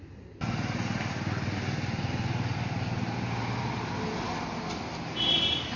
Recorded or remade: recorded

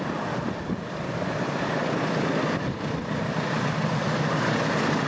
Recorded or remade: recorded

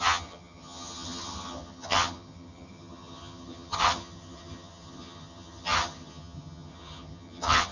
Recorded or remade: remade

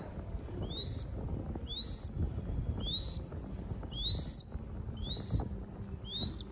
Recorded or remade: recorded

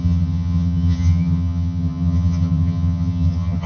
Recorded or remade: remade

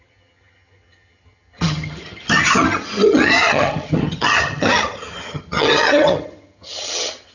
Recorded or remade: remade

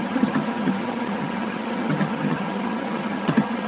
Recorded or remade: remade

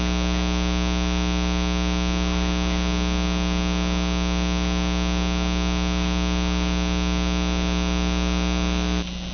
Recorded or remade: recorded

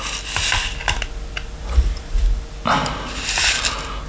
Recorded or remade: recorded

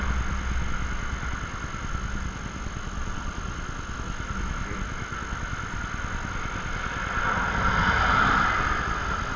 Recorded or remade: recorded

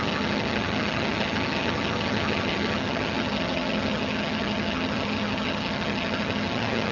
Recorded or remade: remade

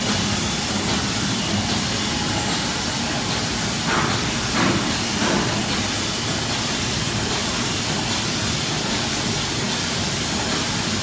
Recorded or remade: recorded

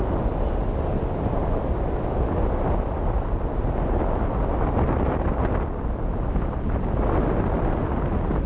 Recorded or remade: recorded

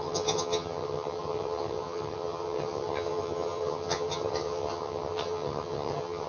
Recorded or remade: remade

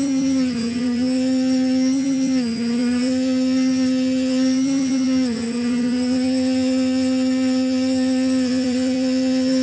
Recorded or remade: remade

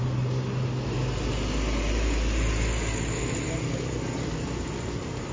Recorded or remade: recorded